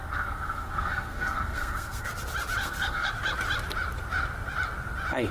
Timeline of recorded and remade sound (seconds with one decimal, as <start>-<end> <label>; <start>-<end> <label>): 0.0-2.1 remade; 2.1-2.6 recorded; 2.6-3.1 remade; 3.1-5.3 recorded

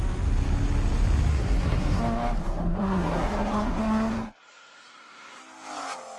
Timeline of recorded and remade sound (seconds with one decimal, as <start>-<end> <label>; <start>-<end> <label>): 0.0-1.3 recorded; 1.3-2.0 remade; 2.0-2.4 recorded; 2.4-5.4 remade; 5.4-6.2 recorded

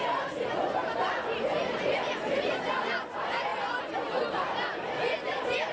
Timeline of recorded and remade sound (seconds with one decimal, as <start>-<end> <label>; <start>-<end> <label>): 0.0-0.6 remade; 0.6-1.8 recorded; 1.8-3.5 remade; 3.5-5.7 recorded

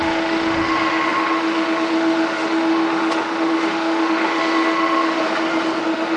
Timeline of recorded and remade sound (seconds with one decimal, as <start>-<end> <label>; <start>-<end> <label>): 0.0-5.2 remade; 5.2-5.8 recorded; 5.8-6.2 remade

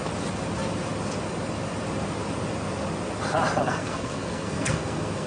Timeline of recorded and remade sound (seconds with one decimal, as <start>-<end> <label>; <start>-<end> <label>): 0.0-3.6 recorded; 3.6-5.3 remade

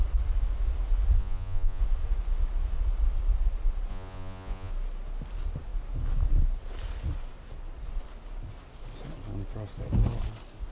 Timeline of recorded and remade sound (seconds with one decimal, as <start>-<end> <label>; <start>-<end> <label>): 0.0-1.2 recorded; 1.2-1.8 remade; 1.8-3.9 recorded; 3.9-4.7 remade; 4.7-10.7 recorded